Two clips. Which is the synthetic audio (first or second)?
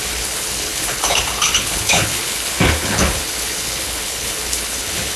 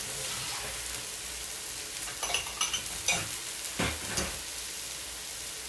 first